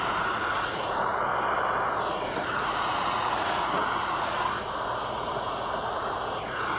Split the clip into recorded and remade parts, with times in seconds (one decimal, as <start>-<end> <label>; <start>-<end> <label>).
0.0-1.3 remade; 1.3-1.8 recorded; 1.8-6.8 remade